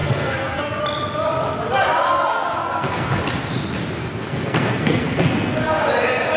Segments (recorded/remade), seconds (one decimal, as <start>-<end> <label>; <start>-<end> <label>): 0.0-0.8 remade; 0.8-2.3 recorded; 2.3-3.2 remade; 3.2-4.0 recorded; 4.0-5.8 remade; 5.8-6.4 recorded